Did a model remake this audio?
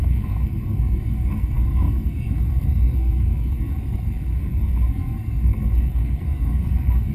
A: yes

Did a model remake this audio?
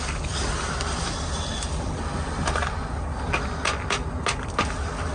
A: no